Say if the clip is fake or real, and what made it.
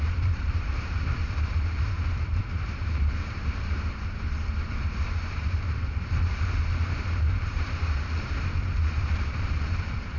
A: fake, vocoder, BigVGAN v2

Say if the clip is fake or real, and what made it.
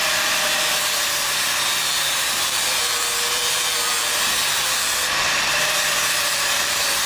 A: fake, vocoder, BigVGAN v2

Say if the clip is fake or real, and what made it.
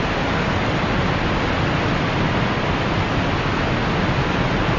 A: real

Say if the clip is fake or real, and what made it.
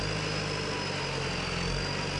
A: real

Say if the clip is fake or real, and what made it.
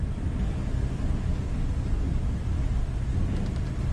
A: real